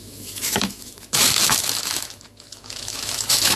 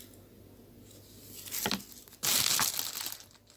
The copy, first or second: first